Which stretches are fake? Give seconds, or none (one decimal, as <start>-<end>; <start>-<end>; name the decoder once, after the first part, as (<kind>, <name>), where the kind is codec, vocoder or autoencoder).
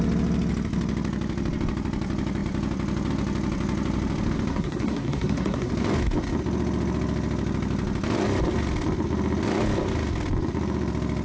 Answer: 4.5-5.7 (codec, SNAC)